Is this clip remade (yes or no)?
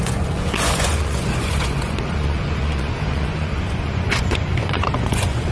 yes